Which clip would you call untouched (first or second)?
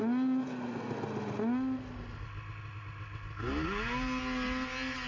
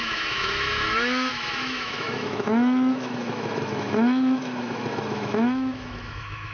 first